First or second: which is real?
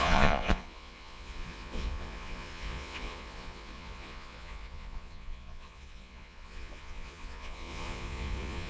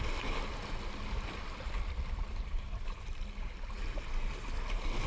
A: second